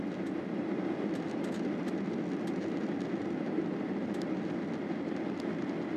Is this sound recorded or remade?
recorded